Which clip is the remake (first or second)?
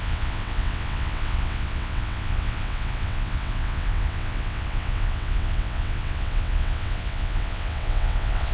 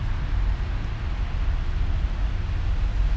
first